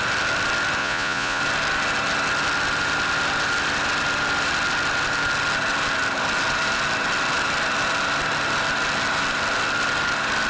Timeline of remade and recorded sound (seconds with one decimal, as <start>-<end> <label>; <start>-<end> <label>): 0.0-0.8 recorded; 0.8-1.4 remade; 1.4-10.5 recorded